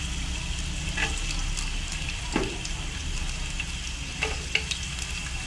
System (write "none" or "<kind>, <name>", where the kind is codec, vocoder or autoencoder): none